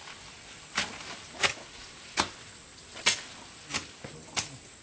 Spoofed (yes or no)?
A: no